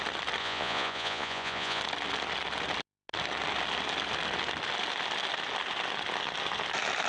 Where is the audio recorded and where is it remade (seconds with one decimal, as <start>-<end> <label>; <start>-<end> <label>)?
0.0-0.4 recorded; 0.4-1.8 remade; 1.8-7.1 recorded